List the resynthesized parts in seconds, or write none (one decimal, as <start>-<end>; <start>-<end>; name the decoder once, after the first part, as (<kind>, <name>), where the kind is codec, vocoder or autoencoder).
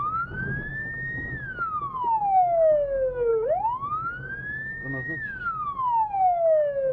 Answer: none